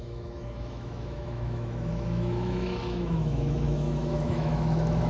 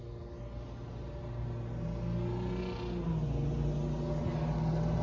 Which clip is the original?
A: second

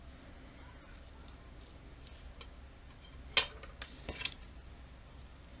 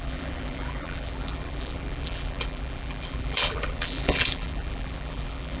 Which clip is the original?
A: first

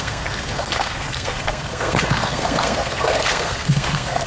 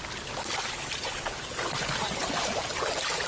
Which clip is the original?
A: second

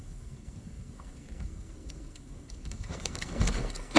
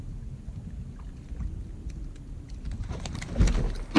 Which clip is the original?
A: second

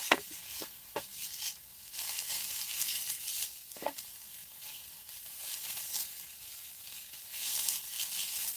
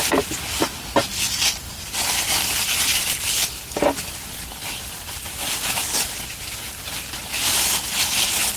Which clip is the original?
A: second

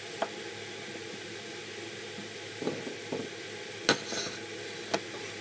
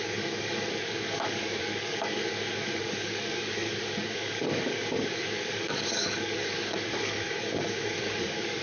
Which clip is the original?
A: first